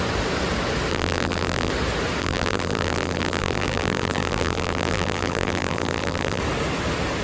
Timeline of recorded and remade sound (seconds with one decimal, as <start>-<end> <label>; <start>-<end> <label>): 0.0-0.9 recorded; 0.9-1.7 remade; 1.7-2.2 recorded; 2.2-6.4 remade; 6.4-7.2 recorded